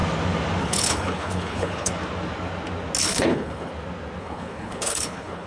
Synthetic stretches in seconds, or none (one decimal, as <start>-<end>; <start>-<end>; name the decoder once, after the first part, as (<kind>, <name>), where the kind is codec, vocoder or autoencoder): 0.6-1.9 (codec, HILCodec); 3.0-3.7; 4.2-5.5